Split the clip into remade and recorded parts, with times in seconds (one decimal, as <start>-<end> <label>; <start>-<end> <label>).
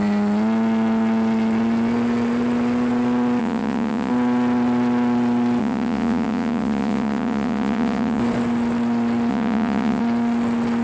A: 0.0-3.4 recorded; 3.4-4.1 remade; 4.1-5.6 recorded; 5.6-8.2 remade; 8.2-9.3 recorded; 9.3-10.0 remade; 10.0-10.8 recorded